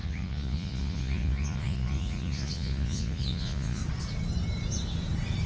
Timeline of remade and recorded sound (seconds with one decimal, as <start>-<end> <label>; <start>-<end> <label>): 0.0-3.8 remade; 3.8-5.5 recorded